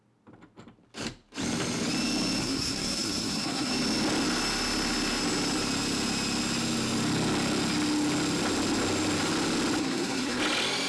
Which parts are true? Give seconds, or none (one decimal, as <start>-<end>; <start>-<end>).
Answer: 0.0-2.4; 3.7-9.8; 10.4-10.9